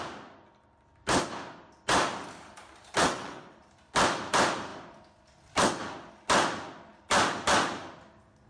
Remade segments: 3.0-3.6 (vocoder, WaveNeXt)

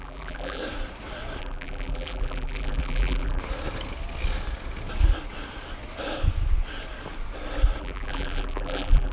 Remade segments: 0.0-0.6 (vocoder, BigVGAN v2); 1.4-3.4; 7.8-9.1

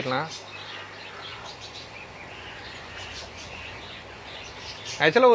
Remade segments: 1.3-4.5 (vocoder, Vocos)